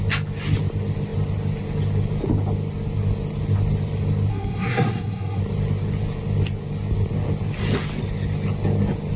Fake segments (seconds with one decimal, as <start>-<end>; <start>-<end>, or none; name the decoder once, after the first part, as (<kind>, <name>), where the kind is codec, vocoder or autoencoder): 4.3-5.4 (codec, SNAC)